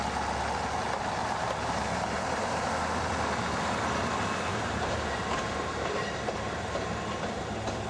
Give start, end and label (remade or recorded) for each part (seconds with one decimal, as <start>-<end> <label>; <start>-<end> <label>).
0.0-1.2 recorded; 1.2-2.7 remade; 2.7-4.5 recorded; 4.5-7.4 remade; 7.4-7.9 recorded